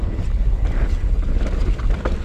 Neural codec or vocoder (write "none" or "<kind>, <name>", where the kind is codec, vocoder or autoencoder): none